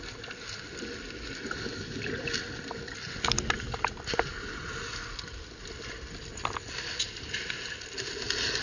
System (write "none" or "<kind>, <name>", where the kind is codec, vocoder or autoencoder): none